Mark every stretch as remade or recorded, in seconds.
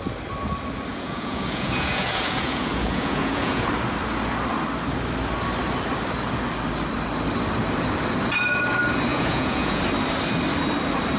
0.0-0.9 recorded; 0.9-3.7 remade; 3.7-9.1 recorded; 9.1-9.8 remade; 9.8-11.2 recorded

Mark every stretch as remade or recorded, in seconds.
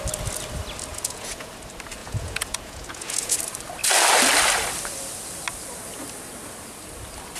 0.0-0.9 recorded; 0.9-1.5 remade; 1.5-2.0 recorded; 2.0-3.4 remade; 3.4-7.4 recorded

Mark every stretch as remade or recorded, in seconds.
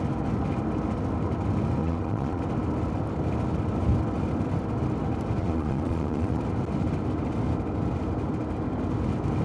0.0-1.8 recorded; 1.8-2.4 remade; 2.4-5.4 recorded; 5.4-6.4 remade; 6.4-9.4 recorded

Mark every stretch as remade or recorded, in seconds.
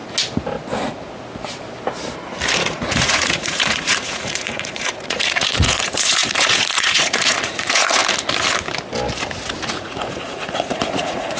0.0-2.6 recorded; 2.6-8.0 remade; 8.0-9.7 recorded; 9.7-11.4 remade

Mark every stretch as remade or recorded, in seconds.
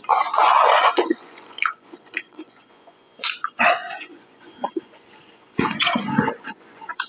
0.0-7.1 remade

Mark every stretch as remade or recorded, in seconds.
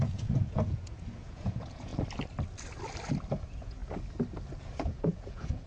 0.0-1.9 remade; 1.9-3.4 recorded; 3.4-3.8 remade; 3.8-4.8 recorded; 4.8-5.7 remade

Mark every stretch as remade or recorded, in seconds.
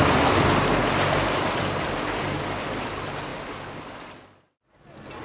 0.0-5.2 recorded